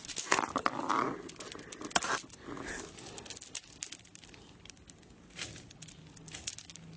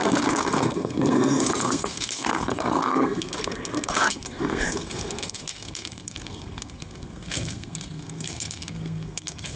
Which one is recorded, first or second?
first